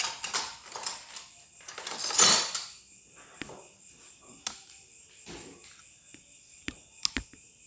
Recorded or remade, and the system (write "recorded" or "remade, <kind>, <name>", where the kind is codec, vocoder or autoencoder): recorded